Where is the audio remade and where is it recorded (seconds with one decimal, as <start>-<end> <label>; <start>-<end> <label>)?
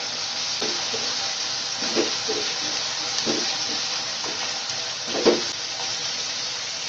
0.0-6.0 recorded; 6.0-6.9 remade